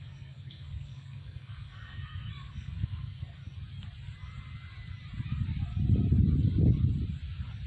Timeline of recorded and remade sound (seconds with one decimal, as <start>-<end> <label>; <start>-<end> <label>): 0.0-3.4 remade; 3.4-7.7 recorded